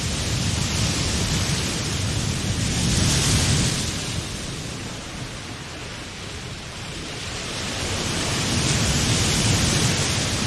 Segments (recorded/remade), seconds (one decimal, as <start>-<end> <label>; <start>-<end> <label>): 0.0-5.8 recorded; 5.8-8.5 remade; 8.5-10.5 recorded